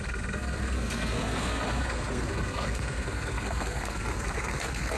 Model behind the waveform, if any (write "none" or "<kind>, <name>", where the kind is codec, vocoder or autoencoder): codec, SNAC